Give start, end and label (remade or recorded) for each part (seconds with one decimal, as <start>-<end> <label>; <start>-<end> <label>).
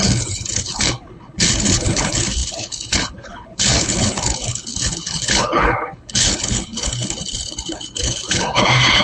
0.0-9.0 remade